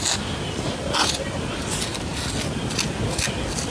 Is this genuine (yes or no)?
yes